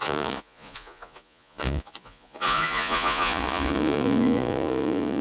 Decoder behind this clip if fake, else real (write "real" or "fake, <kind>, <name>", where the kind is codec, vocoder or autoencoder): fake, vocoder, Vocos